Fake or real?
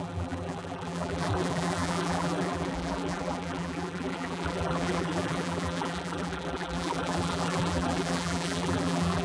fake